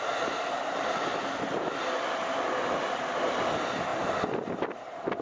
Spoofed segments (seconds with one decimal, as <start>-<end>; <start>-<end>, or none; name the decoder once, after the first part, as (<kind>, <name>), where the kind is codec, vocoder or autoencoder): none

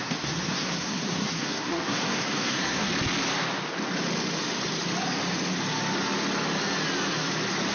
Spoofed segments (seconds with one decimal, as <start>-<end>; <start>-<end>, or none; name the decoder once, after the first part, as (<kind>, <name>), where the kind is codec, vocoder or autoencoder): 0.0-2.9 (codec, SNAC)

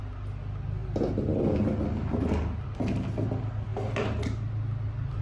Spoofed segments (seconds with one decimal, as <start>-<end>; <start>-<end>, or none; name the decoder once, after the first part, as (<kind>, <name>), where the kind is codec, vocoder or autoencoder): none

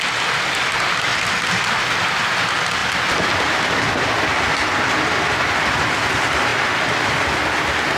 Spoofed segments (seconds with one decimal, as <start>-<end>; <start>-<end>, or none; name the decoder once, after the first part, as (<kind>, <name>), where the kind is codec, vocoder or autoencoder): none

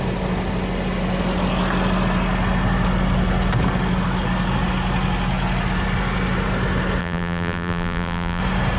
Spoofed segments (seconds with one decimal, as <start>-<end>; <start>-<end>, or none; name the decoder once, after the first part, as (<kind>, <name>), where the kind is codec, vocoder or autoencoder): 7.0-8.4 (vocoder, BigVGAN v2)

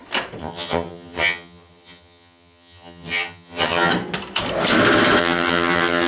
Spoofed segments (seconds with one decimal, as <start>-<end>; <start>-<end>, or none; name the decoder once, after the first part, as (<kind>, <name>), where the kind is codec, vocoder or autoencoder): 0.4-3.9 (vocoder, HiFi-GAN); 5.2-6.1